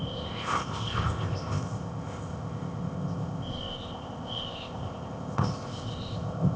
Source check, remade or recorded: remade